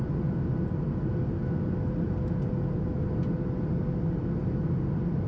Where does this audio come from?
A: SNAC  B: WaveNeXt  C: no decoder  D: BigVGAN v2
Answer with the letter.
C